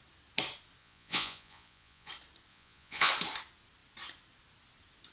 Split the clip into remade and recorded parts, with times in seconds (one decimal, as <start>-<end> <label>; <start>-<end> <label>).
0.0-0.8 recorded; 0.8-2.1 remade; 2.1-2.5 recorded; 2.5-3.1 remade; 3.1-5.1 recorded